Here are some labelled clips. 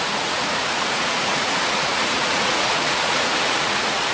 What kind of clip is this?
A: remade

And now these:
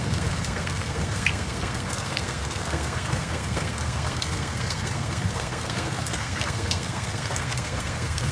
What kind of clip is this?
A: remade